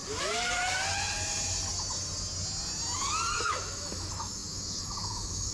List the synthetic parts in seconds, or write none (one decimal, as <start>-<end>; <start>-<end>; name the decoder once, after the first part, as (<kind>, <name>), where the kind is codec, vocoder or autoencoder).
3.3-5.5 (autoencoder, DAC-VAE)